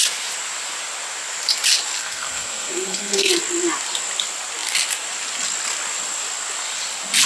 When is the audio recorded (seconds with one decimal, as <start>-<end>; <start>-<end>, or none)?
0.0-2.0; 3.3-7.3